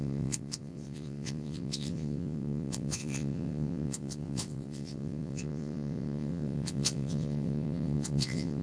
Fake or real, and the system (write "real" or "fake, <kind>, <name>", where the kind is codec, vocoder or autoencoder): fake, vocoder, WaveNeXt